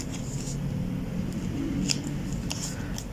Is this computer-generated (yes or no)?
no